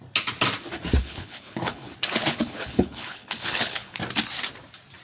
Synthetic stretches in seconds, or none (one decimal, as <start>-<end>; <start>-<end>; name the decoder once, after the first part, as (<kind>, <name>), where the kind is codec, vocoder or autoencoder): 1.0-4.0 (codec, HILCodec)